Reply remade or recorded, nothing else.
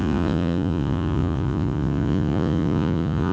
remade